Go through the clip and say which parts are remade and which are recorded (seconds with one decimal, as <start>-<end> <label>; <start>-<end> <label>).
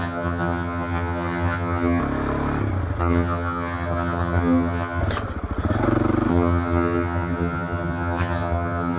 0.0-2.0 remade; 2.0-3.0 recorded; 3.0-5.0 remade; 5.0-6.3 recorded; 6.3-9.0 remade